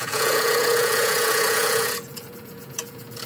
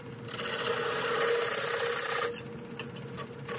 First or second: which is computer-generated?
first